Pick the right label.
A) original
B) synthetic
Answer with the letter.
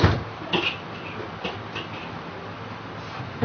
A